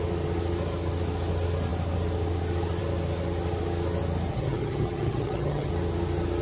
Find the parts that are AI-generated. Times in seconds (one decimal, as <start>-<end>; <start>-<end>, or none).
4.3-5.7